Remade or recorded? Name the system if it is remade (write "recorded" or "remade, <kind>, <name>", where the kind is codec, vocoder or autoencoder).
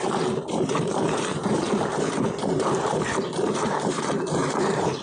remade, vocoder, BigVGAN v2